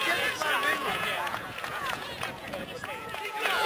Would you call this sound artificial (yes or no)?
yes